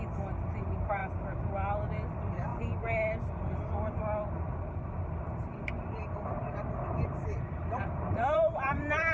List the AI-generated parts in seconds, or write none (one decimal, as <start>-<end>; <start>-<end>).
0.0-1.0; 2.1-2.5; 6.3-9.1